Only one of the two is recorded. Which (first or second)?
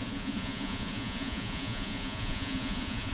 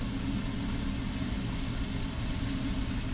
second